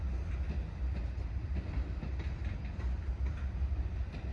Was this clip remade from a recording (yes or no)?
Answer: no